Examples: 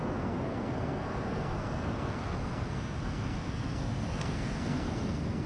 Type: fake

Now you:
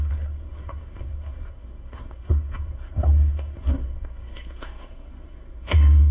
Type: fake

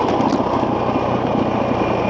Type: real